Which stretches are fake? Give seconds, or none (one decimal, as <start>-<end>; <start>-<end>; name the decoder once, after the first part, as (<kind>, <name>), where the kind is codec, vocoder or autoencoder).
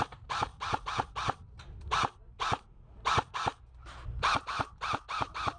0.0-0.5 (vocoder, BigVGAN v2); 3.7-5.6